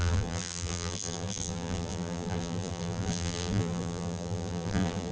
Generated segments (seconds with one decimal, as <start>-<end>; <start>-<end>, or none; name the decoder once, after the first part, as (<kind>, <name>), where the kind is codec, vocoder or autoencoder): 0.0-5.1 (vocoder, BigVGAN v2)